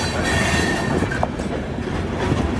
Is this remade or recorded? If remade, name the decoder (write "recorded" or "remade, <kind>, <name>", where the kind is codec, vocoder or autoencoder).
remade, vocoder, BigVGAN v2